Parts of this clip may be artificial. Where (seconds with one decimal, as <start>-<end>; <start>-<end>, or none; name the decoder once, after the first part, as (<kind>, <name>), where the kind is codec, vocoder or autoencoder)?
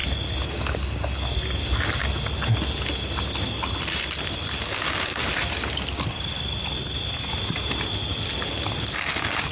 4.6-5.3 (codec, DAC); 8.9-9.5